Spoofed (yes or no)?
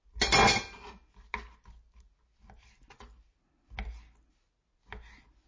no